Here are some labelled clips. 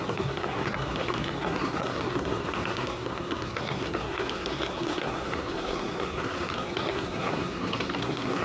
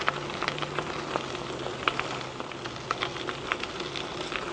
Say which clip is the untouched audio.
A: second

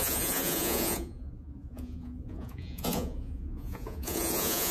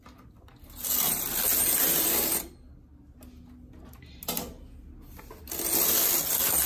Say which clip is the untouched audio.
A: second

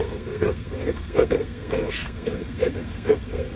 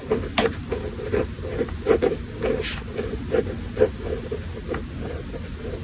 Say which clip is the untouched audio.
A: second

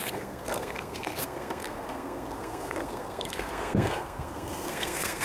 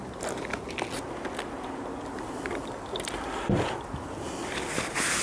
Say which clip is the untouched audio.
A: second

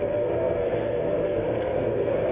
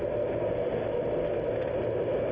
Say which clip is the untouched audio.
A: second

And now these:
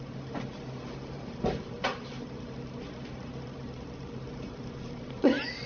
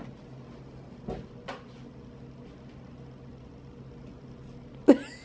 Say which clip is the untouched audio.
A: second